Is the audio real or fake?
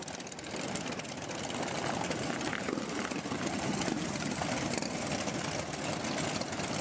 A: real